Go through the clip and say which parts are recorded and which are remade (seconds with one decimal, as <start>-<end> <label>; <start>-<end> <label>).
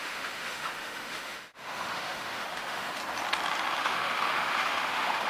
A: 0.0-3.0 remade; 3.0-3.8 recorded; 3.8-5.3 remade